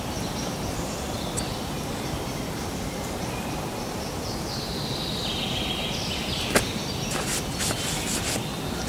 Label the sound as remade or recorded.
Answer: recorded